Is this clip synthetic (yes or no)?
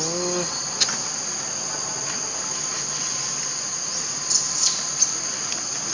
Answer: no